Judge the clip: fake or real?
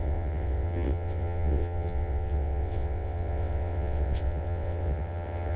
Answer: fake